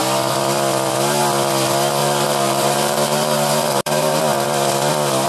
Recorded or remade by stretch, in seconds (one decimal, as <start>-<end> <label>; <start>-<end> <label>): 0.0-2.0 recorded; 2.0-4.2 remade; 4.2-5.3 recorded